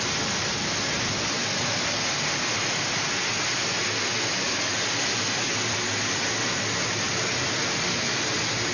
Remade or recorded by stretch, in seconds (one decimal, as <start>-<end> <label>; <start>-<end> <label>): 0.0-8.7 recorded